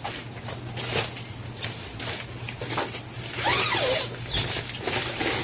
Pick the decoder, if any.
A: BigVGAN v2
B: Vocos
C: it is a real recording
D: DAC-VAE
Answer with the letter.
C